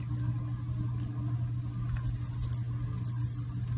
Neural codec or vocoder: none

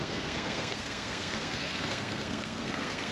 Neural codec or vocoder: codec, SNAC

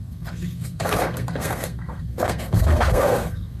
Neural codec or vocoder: codec, SNAC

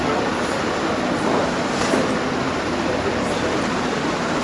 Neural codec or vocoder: none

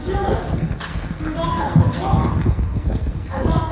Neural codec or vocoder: codec, SNAC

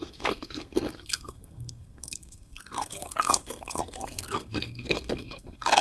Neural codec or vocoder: codec, SNAC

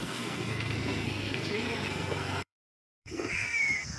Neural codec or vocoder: codec, SNAC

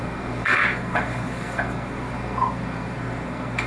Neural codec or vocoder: codec, SNAC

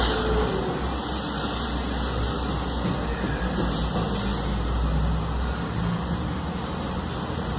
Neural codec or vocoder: none